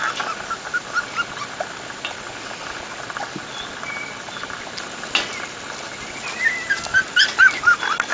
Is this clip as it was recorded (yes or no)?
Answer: yes